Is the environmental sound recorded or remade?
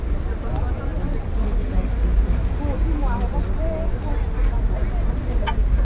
recorded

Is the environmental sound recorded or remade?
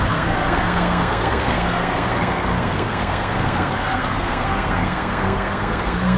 remade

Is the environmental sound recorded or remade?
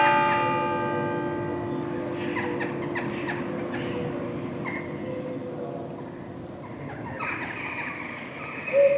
recorded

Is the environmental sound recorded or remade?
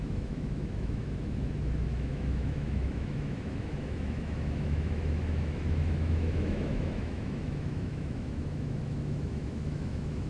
remade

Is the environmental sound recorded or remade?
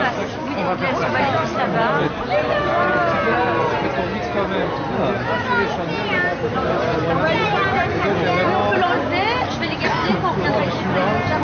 recorded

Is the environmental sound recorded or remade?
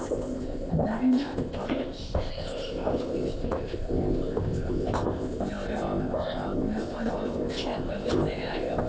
remade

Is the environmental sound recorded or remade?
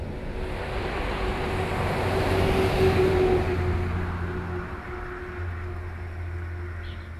recorded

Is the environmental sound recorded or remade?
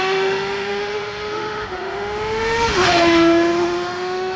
remade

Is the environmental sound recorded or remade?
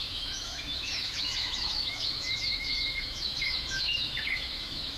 remade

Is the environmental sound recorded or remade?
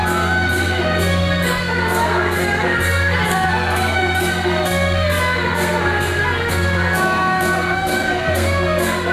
remade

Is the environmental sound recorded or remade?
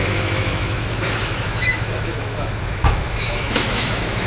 remade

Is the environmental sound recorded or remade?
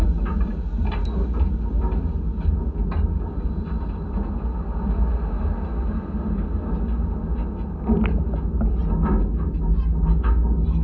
recorded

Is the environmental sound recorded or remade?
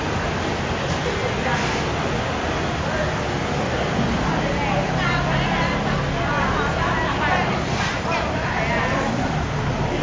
recorded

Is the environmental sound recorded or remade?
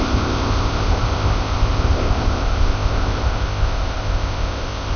remade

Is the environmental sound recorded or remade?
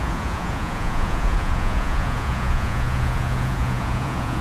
remade